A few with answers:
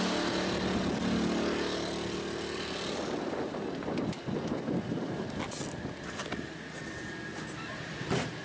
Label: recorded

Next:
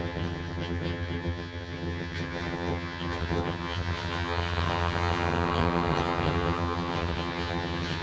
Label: remade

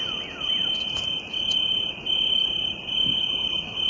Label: recorded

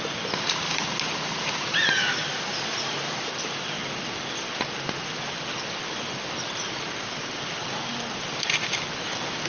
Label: recorded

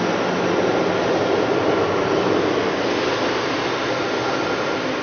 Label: recorded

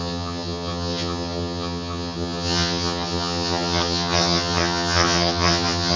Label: remade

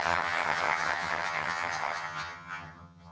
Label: remade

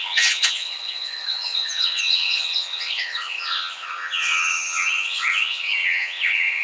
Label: remade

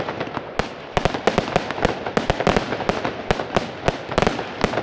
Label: recorded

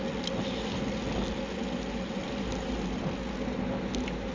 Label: recorded